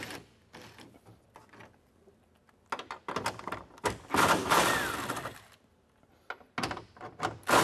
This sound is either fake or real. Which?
real